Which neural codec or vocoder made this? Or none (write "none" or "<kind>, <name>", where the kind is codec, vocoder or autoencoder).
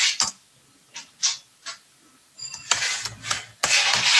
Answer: none